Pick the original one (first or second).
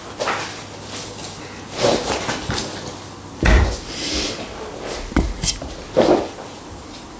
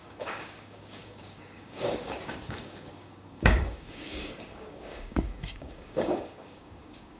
first